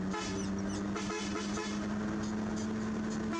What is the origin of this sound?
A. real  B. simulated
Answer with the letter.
A